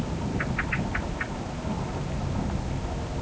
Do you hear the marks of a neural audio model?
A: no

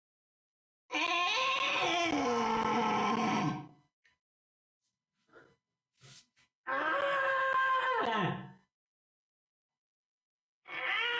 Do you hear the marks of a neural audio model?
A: no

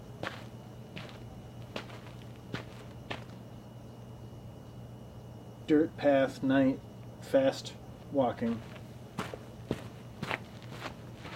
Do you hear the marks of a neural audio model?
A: no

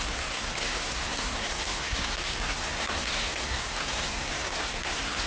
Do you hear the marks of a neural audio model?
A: yes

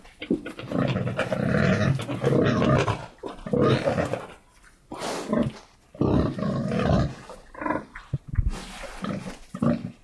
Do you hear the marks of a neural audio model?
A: no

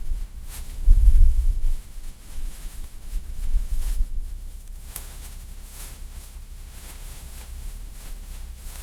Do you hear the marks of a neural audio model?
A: yes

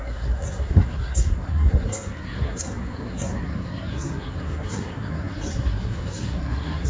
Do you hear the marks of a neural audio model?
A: yes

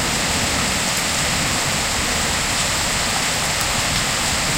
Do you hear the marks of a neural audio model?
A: no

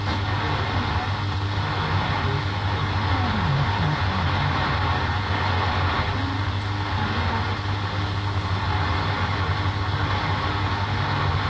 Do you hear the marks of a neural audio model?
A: no